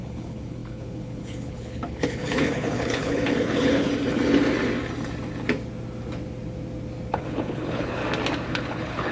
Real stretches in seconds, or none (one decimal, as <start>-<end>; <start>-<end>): 3.9-7.1; 8.0-8.5

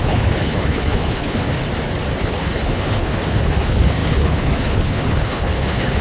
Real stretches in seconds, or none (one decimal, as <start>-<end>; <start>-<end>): 1.6-2.2

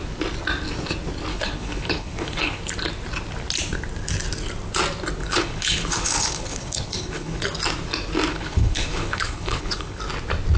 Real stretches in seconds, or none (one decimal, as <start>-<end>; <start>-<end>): 0.0-1.3; 2.6-5.2; 7.4-8.3; 10.0-10.6

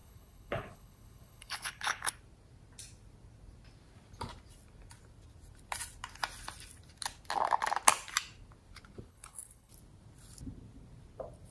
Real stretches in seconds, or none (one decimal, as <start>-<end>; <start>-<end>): 2.1-9.1; 9.7-11.5

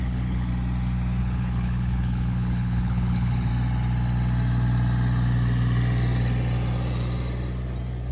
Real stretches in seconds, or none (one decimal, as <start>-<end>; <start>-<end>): 0.5-1.2; 3.5-8.1

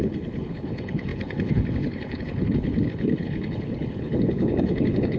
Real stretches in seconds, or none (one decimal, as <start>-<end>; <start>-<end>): none

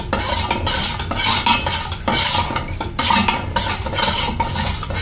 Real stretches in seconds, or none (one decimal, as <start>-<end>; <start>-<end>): 0.0-5.0